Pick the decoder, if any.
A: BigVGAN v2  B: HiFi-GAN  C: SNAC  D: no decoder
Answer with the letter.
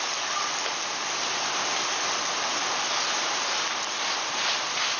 D